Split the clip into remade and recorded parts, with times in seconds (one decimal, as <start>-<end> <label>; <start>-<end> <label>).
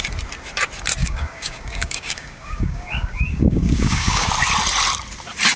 0.0-1.0 recorded; 1.0-4.3 remade; 4.3-5.6 recorded